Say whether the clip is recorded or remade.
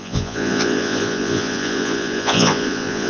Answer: remade